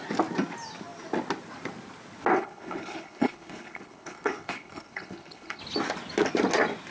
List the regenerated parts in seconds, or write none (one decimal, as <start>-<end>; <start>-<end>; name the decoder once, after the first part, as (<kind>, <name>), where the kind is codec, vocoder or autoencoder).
2.3-5.6 (codec, HILCodec)